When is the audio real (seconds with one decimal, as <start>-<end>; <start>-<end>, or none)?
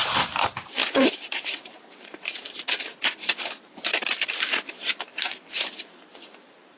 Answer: none